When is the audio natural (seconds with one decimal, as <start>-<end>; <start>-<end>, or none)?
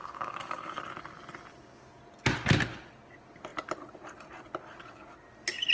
0.8-5.7